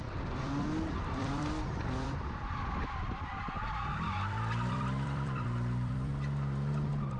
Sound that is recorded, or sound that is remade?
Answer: remade